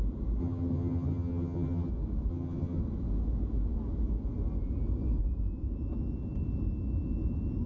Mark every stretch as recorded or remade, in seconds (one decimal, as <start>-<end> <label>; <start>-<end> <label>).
0.0-0.4 recorded; 0.4-1.9 remade; 1.9-2.3 recorded; 2.3-2.8 remade; 2.8-7.7 recorded